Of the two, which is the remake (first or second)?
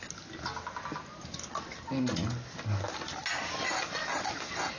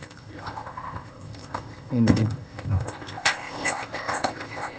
second